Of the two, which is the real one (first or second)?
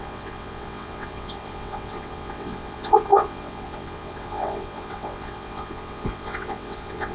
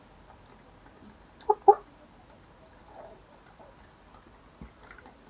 second